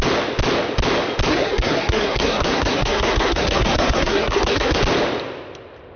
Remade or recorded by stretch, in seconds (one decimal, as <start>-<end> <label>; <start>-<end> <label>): 0.0-1.3 recorded; 1.3-4.8 remade; 4.8-6.0 recorded